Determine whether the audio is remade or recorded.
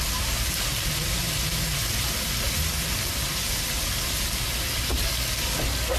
recorded